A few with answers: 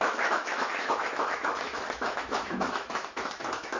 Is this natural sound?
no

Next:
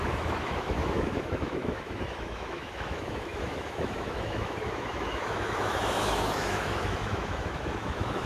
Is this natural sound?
no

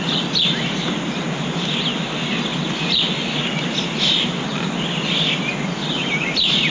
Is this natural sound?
yes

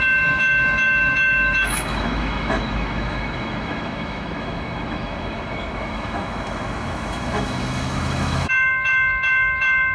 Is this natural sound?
no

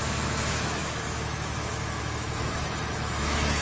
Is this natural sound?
no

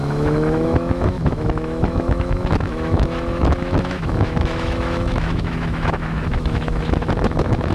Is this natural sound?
no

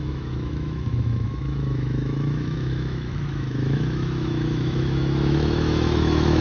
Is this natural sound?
no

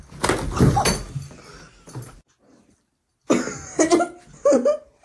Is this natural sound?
yes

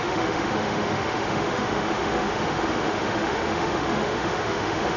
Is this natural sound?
no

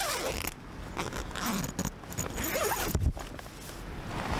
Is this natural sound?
yes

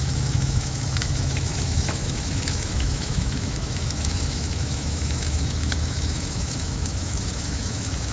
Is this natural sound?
no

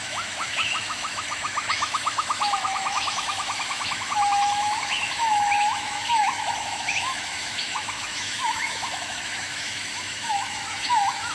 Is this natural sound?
no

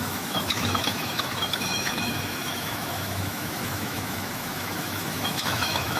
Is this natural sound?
no